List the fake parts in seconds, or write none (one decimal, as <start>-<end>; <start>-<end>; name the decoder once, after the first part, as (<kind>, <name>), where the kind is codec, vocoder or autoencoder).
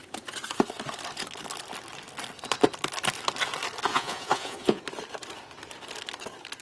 3.9-4.8 (vocoder, Vocos)